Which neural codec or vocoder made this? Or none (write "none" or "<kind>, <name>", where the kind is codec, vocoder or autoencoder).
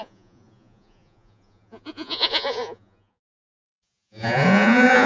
vocoder, Vocos